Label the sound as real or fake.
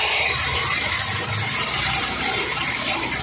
fake